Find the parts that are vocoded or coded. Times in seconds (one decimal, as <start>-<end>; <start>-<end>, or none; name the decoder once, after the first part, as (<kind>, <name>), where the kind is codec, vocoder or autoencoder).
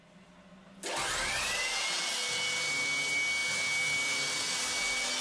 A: none